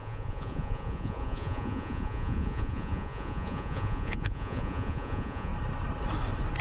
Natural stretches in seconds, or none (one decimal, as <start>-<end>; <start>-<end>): 5.5-6.6